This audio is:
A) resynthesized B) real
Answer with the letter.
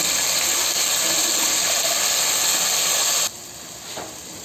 B